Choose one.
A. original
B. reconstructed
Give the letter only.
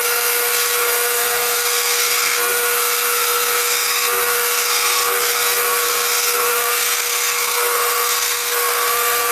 B